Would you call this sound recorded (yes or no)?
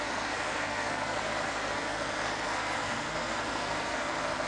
no